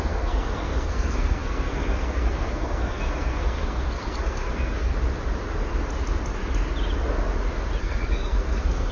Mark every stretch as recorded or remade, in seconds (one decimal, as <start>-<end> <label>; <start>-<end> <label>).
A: 0.0-4.9 remade; 4.9-7.8 recorded; 7.8-8.9 remade

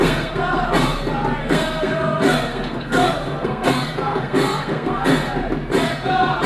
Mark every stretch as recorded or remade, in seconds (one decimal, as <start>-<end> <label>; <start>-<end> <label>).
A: 0.0-0.6 remade; 0.6-1.4 recorded; 1.4-5.3 remade; 5.3-6.5 recorded

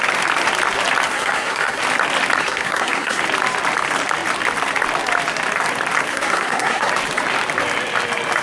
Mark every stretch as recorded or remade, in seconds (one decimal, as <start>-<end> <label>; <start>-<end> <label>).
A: 0.0-1.1 recorded; 1.1-1.8 remade; 1.8-2.4 recorded; 2.4-3.2 remade; 3.2-6.1 recorded; 6.1-6.9 remade; 6.9-8.4 recorded

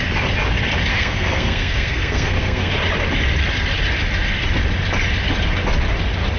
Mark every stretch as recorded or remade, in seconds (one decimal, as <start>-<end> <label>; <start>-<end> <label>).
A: 0.0-0.9 recorded; 0.9-2.7 remade; 2.7-6.4 recorded

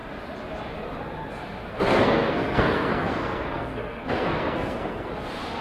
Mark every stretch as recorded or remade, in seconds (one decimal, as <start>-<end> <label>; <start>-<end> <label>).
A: 0.0-1.7 recorded; 1.7-5.1 remade; 5.1-5.6 recorded

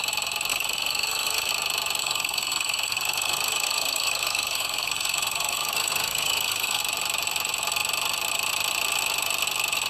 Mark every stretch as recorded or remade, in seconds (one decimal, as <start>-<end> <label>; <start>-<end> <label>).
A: 0.0-0.5 recorded; 0.5-1.5 remade; 1.5-2.0 recorded; 2.0-6.8 remade; 6.8-9.9 recorded

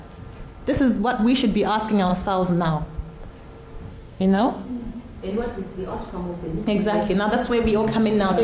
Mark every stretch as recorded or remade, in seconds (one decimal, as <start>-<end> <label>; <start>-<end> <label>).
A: 0.0-3.9 recorded; 3.9-5.2 remade; 5.2-8.4 recorded